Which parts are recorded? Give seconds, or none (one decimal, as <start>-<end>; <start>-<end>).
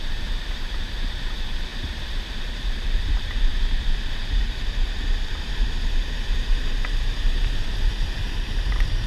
none